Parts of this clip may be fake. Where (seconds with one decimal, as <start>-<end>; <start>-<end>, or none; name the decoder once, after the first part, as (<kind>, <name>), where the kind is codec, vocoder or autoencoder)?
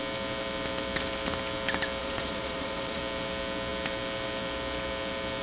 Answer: 2.0-3.0 (vocoder, Vocos)